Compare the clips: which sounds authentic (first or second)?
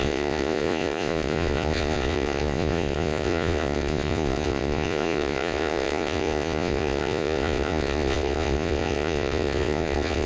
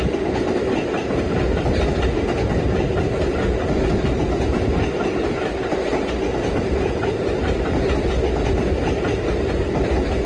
second